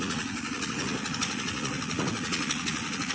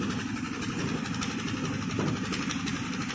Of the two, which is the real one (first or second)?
second